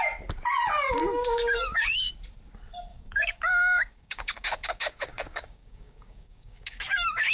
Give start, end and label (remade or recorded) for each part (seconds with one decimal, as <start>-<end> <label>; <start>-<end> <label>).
0.0-1.0 recorded; 1.0-2.1 remade; 2.1-2.9 recorded; 2.9-7.3 remade